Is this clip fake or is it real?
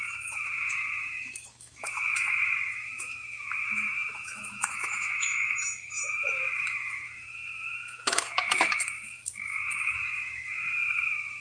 fake